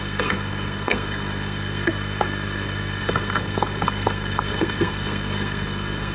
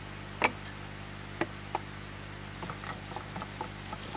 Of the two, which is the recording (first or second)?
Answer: second